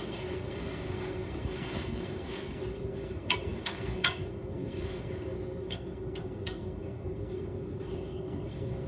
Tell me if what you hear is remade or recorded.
remade